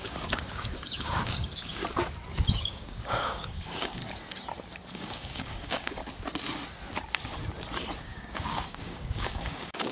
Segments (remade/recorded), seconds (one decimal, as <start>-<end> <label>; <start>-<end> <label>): 0.0-1.8 remade; 1.8-2.5 recorded; 2.5-4.0 remade; 4.0-4.9 recorded; 4.9-6.0 remade; 6.0-8.0 recorded; 8.0-9.9 remade